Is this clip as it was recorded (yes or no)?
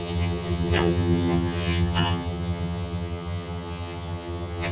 no